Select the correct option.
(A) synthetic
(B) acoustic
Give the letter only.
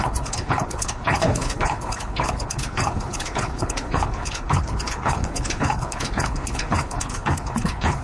A